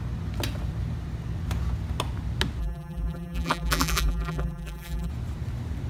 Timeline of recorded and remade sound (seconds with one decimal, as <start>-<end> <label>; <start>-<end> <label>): 0.0-2.6 recorded; 2.6-5.1 remade; 5.1-5.9 recorded